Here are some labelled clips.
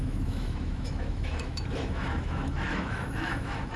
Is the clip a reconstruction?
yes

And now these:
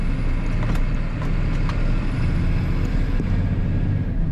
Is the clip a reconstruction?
no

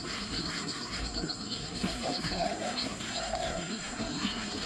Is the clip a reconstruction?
yes